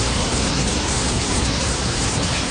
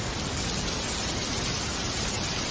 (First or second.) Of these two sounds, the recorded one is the second